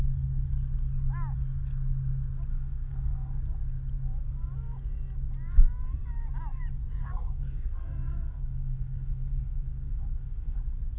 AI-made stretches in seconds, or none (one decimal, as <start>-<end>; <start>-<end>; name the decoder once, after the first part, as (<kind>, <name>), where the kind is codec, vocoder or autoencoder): 2.5-3.4 (codec, SNAC); 7.0-10.6